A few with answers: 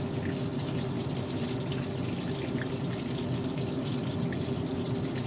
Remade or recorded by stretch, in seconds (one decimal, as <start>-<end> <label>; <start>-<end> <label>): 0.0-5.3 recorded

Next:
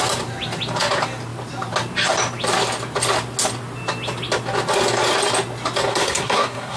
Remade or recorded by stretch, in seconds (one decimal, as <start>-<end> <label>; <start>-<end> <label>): 0.0-5.9 recorded; 5.9-6.8 remade

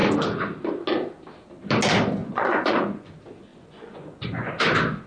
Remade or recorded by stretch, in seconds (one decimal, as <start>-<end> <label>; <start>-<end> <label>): 0.0-2.2 recorded; 2.2-3.1 remade; 3.1-3.5 recorded; 3.5-4.5 remade; 4.5-5.1 recorded

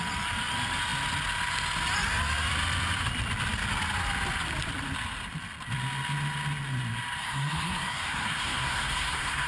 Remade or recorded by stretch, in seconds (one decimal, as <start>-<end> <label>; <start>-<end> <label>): 0.0-7.2 recorded; 7.2-9.5 remade